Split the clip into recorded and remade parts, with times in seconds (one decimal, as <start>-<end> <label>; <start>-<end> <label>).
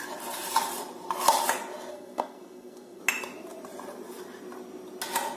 0.0-1.9 recorded; 1.9-3.0 remade; 3.0-5.4 recorded